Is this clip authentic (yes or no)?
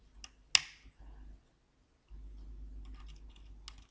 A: yes